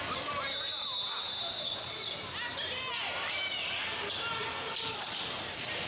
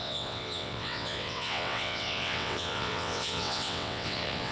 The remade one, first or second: second